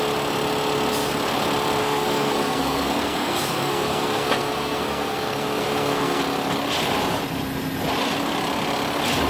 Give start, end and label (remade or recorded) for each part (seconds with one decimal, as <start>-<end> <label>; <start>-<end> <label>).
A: 0.0-1.8 recorded; 1.8-6.2 remade; 6.2-9.3 recorded